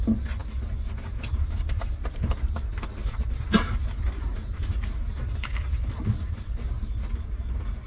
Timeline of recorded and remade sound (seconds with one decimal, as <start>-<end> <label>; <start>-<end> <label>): 0.0-0.4 recorded; 0.4-2.5 remade; 2.5-3.0 recorded; 3.0-7.9 remade